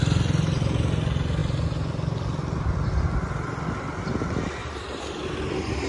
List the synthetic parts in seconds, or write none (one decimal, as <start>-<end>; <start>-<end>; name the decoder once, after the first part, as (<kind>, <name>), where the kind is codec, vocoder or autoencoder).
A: 4.6-5.1 (vocoder, BigVGAN v2)